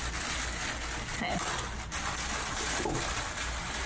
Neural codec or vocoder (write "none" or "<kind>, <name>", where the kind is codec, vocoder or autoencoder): none